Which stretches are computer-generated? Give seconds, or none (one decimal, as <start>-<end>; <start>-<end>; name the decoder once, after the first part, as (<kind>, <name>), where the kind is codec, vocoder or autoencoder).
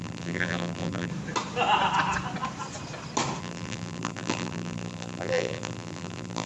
0.0-1.1 (vocoder, BigVGAN v2); 3.4-6.5